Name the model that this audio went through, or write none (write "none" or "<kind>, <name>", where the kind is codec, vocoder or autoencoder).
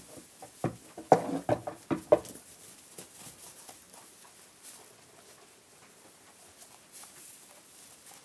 none